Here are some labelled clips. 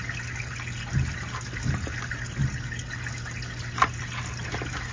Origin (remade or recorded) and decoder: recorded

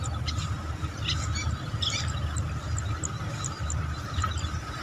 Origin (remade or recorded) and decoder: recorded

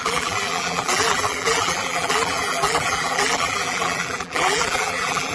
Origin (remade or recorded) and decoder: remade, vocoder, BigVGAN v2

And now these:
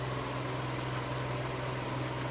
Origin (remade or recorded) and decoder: recorded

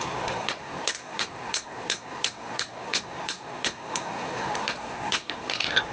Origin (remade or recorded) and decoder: remade, codec, SNAC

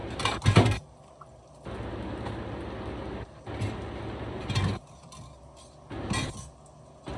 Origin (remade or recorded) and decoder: recorded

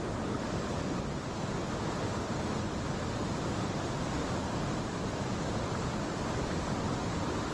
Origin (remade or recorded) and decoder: recorded